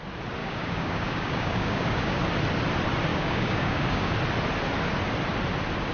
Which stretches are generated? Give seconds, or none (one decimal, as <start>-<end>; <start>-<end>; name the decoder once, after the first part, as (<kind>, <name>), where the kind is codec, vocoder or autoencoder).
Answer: 0.4-2.2 (codec, DAC); 3.1-4.1